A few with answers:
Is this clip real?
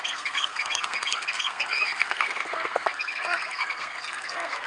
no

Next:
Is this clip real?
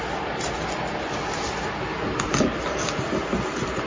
yes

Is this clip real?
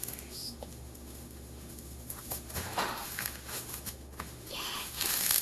no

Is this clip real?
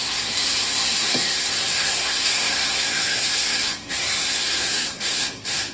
no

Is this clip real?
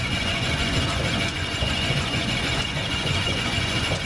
no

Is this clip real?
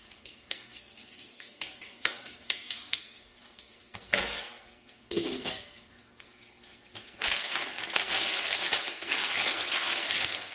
no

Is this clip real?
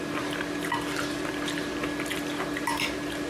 no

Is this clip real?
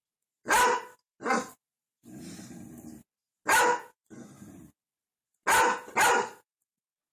yes